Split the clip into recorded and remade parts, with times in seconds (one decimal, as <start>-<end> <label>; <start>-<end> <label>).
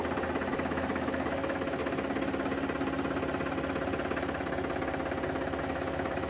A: 0.0-0.5 recorded; 0.5-1.8 remade; 1.8-5.6 recorded; 5.6-6.3 remade